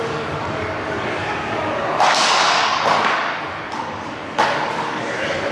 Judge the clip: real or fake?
fake